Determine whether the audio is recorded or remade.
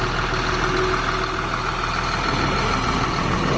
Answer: recorded